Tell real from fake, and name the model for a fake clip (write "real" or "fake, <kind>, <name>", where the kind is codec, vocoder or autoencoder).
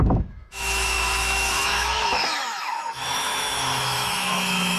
fake, autoencoder, DAC-VAE